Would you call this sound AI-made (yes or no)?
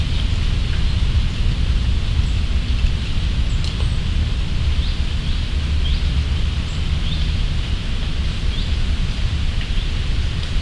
no